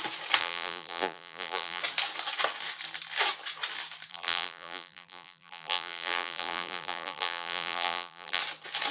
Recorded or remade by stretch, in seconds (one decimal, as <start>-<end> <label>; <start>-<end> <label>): 0.0-0.4 recorded; 0.4-1.8 remade; 1.8-4.1 recorded; 4.1-8.4 remade; 8.4-8.9 recorded